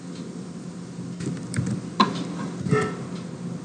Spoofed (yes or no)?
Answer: no